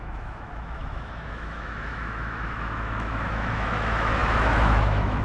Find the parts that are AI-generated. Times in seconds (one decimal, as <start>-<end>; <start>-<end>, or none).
0.0-5.2

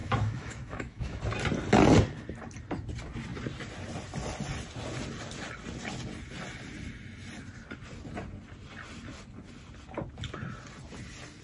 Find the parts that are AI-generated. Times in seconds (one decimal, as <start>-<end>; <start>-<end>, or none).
0.0-1.2